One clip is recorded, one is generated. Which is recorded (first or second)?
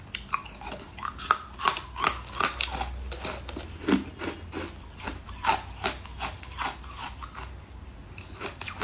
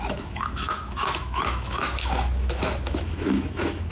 first